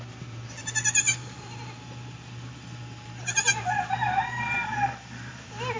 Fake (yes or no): yes